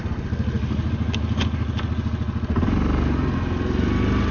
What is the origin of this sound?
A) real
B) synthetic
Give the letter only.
A